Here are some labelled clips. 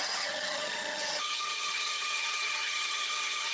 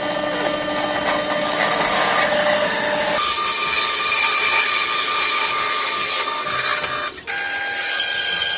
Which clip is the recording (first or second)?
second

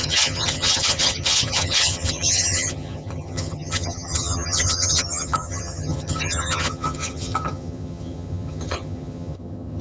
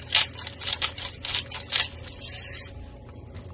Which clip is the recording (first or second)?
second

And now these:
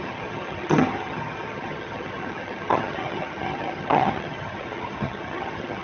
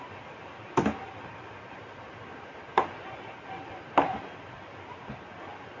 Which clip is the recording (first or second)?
second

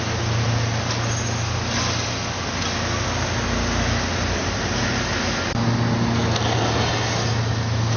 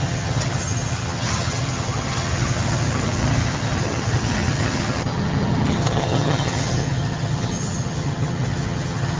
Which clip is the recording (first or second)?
first